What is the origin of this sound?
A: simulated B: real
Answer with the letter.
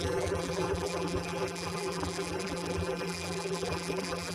A